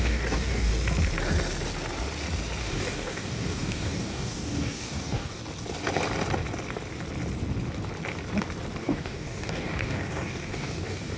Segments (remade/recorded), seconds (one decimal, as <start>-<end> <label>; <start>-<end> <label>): 0.0-0.7 remade; 0.7-2.6 recorded; 2.6-5.4 remade; 5.4-8.8 recorded; 8.8-11.2 remade